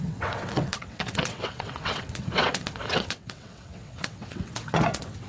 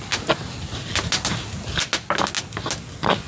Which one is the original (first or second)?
second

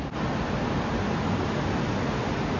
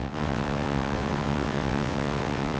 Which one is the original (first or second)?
first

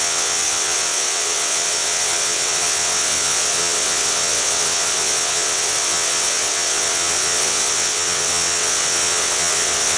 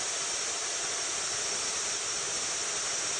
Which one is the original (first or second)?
second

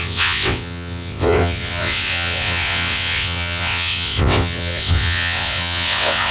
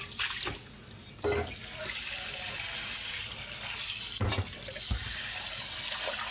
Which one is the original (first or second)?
second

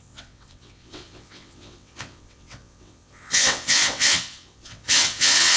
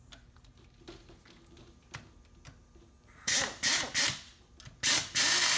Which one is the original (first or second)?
second